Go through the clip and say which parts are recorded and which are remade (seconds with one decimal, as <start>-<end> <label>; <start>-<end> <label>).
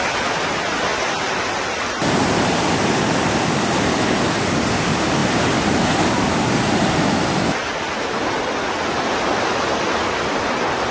0.0-10.9 recorded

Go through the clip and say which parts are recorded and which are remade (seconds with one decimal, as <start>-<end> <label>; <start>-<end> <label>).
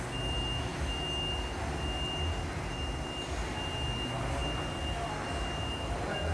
0.0-6.3 recorded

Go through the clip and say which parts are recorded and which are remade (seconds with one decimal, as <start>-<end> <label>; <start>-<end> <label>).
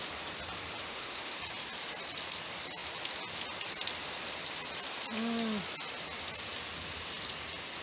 0.0-0.9 recorded; 0.9-1.4 remade; 1.4-7.8 recorded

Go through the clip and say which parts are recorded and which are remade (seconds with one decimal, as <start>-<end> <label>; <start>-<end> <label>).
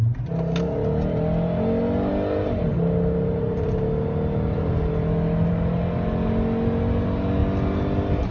0.0-8.3 recorded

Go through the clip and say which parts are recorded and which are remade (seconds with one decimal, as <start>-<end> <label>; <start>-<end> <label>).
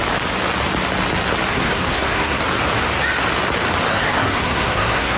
0.0-1.5 recorded; 1.5-2.4 remade; 2.4-3.9 recorded; 3.9-5.2 remade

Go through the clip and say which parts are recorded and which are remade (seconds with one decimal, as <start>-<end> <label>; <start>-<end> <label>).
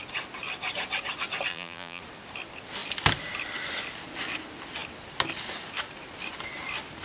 0.0-1.5 recorded; 1.5-2.0 remade; 2.0-7.0 recorded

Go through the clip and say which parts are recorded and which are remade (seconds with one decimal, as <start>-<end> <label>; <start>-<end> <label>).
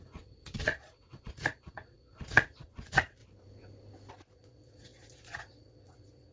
0.0-3.2 remade; 3.2-4.1 recorded; 4.1-6.3 remade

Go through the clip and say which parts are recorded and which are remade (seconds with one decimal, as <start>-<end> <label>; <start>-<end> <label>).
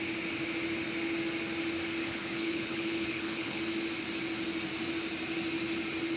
0.0-2.0 recorded; 2.0-3.6 remade; 3.6-6.2 recorded